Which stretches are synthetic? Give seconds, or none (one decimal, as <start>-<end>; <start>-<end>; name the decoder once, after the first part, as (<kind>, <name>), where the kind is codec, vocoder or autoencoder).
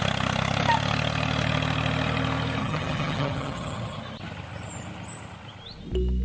2.6-4.0 (vocoder, HiFi-GAN)